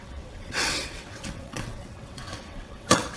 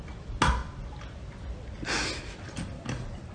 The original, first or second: second